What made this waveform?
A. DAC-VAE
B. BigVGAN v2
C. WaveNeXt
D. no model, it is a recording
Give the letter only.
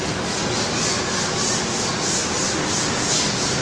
D